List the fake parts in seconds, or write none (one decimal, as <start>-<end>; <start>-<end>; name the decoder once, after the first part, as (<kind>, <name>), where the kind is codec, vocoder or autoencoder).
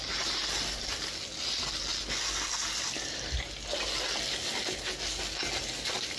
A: none